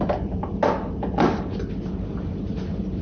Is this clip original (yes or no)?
yes